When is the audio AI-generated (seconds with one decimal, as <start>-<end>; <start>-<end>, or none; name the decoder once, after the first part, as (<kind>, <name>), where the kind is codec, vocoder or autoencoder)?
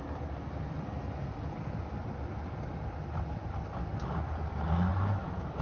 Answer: 4.9-5.6 (autoencoder, DAC-VAE)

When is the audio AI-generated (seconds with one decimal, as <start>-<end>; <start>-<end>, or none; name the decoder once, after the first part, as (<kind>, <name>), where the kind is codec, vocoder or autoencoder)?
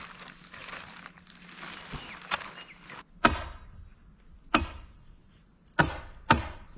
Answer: none